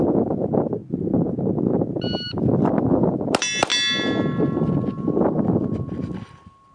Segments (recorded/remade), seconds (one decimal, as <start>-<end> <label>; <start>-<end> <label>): 0.0-6.7 recorded